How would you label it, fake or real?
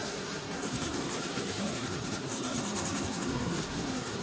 fake